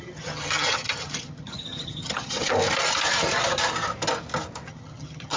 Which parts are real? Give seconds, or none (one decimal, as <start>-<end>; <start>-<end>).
2.5-4.7